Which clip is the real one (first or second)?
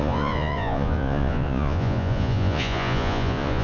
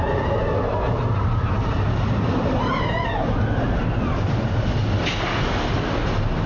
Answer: second